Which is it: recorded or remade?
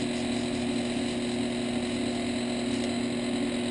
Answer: recorded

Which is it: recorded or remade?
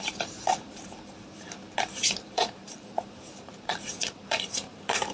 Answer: remade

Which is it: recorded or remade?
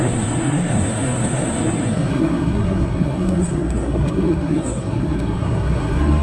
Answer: remade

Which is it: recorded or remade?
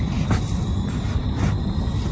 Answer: recorded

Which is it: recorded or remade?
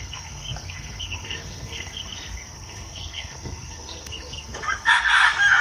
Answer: remade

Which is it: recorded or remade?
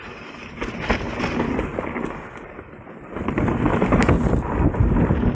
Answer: recorded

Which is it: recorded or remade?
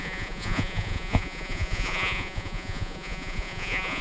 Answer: remade